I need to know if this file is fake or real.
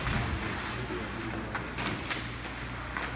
real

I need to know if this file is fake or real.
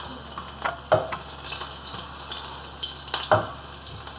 real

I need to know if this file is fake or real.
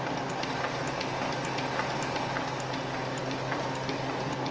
real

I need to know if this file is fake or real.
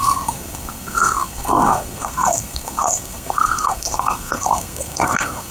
fake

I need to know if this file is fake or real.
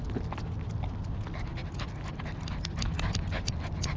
real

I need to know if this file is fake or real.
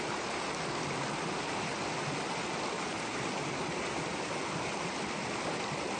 real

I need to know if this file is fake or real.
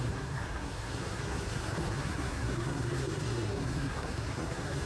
fake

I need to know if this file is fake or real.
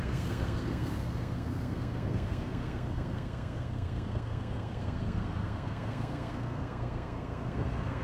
fake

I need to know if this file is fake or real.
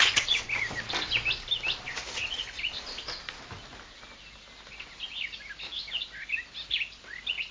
real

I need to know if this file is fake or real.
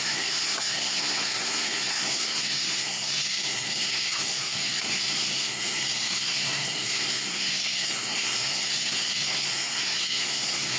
fake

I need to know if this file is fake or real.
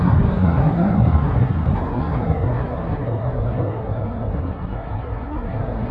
fake